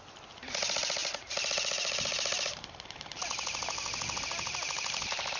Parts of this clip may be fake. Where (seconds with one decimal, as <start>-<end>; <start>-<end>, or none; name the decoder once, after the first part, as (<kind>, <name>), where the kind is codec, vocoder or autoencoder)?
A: none